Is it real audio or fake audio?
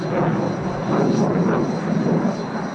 real